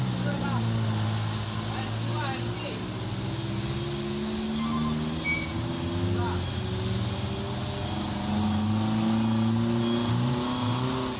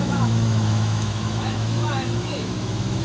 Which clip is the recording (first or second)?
first